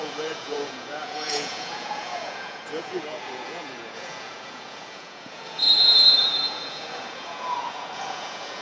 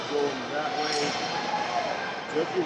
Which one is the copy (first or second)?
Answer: first